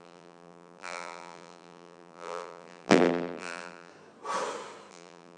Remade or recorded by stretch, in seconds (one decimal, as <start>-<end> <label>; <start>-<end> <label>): 0.0-3.9 remade; 3.9-4.9 recorded; 4.9-5.4 remade